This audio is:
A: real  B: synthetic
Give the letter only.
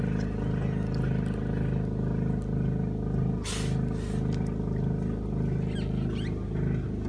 A